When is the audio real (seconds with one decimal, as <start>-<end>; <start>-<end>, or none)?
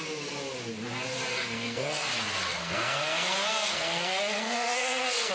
0.0-1.3; 2.1-2.6